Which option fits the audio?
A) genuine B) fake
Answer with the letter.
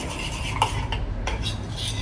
A